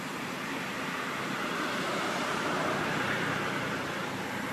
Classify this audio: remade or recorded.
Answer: remade